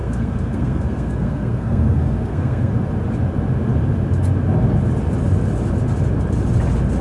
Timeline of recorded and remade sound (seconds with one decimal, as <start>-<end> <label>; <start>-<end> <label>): 0.0-2.7 remade; 2.7-7.0 recorded

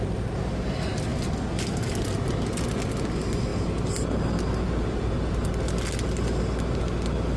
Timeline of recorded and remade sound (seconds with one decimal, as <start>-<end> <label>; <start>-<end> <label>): 0.0-7.4 recorded

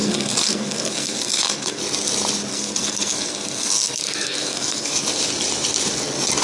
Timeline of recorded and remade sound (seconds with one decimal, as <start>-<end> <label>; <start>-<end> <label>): 0.0-1.8 remade; 1.8-2.5 recorded; 2.5-4.9 remade; 4.9-6.4 recorded